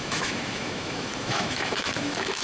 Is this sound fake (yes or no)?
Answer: yes